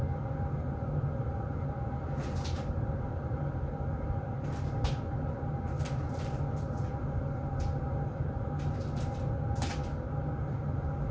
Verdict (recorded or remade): recorded